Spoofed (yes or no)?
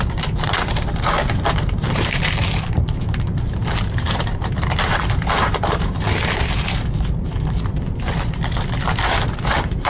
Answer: yes